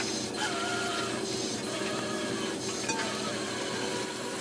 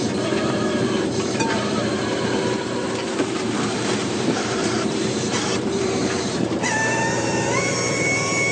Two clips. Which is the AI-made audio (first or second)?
second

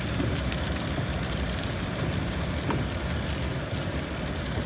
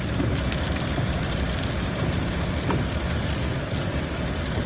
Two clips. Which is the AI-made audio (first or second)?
first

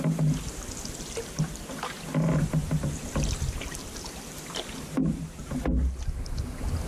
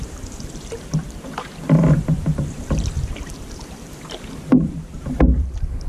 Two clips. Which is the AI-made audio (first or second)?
second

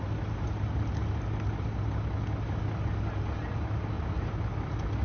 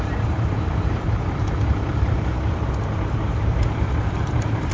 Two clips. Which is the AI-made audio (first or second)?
second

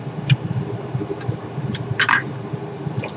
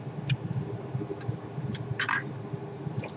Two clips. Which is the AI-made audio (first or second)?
first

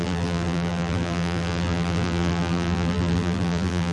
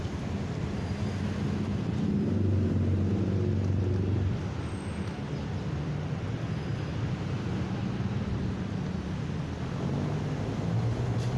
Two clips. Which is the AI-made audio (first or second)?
first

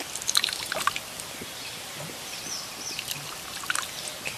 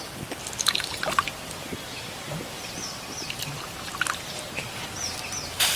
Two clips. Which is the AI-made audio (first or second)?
first